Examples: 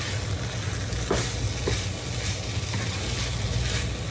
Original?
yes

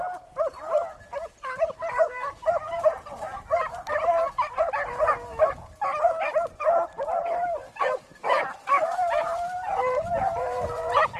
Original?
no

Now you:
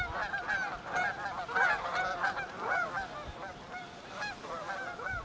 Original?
no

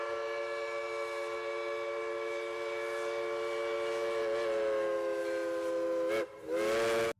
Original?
yes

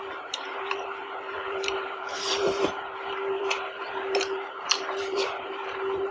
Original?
no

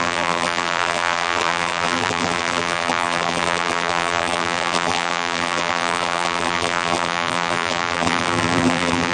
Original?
no